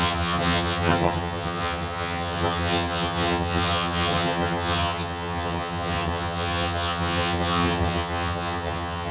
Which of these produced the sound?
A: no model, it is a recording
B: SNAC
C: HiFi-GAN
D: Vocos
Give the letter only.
C